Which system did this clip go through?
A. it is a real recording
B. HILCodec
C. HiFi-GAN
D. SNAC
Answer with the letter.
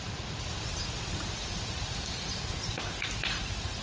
A